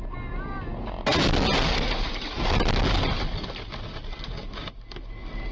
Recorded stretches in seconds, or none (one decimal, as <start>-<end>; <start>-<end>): 0.0-5.5

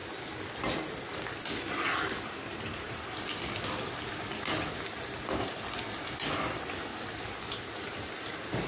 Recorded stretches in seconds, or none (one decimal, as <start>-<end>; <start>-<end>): 0.0-8.7

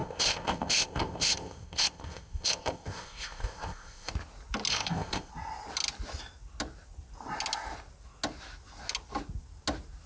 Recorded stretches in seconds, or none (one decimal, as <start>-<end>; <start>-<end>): 4.1-4.7; 5.3-10.1